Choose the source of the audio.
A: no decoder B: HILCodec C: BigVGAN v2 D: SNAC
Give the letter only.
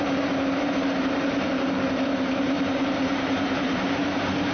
C